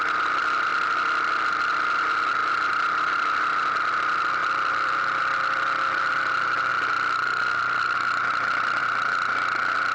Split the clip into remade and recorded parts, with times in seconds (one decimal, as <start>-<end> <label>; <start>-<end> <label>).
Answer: 0.0-0.7 remade; 0.7-1.4 recorded; 1.4-9.9 remade